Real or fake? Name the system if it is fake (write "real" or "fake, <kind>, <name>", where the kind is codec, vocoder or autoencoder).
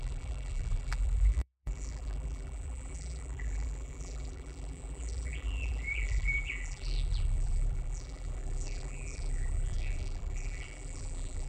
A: fake, vocoder, BigVGAN v2